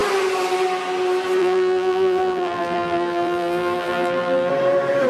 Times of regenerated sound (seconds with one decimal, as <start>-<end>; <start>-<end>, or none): 1.4-4.5